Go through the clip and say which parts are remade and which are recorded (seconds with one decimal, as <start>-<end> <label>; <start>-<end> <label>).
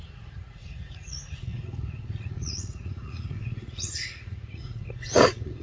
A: 0.0-5.6 remade